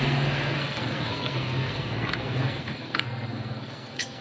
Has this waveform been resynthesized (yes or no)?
yes